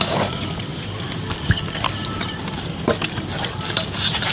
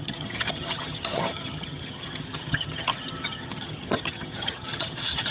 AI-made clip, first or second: second